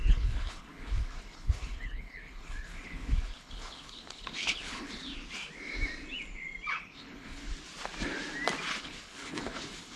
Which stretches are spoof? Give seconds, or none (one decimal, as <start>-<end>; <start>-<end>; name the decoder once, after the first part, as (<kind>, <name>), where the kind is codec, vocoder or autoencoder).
0.0-5.0 (codec, HILCodec); 6.8-7.5; 8.8-10.0